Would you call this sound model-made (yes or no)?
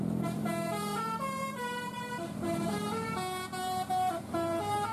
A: yes